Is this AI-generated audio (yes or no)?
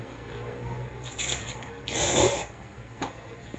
yes